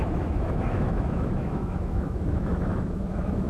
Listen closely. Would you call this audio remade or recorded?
remade